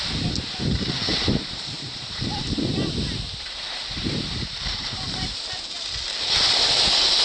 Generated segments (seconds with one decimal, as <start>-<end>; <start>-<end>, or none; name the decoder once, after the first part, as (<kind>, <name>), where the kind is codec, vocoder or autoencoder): 1.1-5.4 (vocoder, BigVGAN v2)